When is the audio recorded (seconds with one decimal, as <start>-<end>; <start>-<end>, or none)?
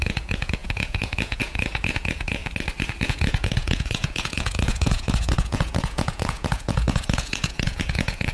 2.4-3.0